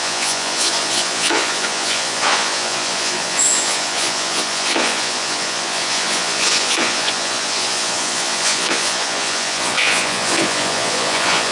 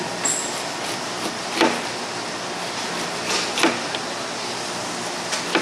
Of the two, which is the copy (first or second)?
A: first